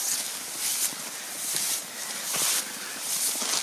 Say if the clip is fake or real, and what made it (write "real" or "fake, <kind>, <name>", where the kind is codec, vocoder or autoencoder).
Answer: real